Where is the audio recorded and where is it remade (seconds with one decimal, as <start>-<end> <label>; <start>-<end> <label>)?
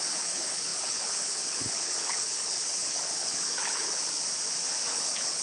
0.0-4.2 remade; 4.2-4.9 recorded; 4.9-5.4 remade